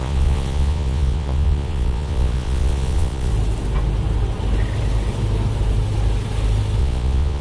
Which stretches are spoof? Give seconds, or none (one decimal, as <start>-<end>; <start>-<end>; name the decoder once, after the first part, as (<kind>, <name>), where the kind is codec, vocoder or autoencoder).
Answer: 0.0-3.3 (vocoder, Vocos); 6.8-7.4